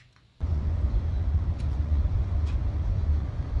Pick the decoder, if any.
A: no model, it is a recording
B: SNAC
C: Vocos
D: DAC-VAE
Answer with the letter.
C